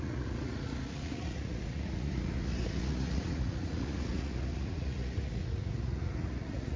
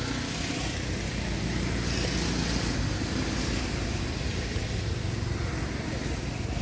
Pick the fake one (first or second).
first